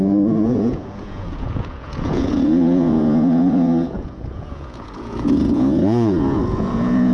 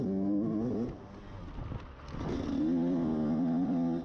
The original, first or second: second